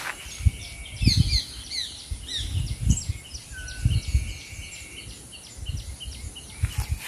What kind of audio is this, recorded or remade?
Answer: recorded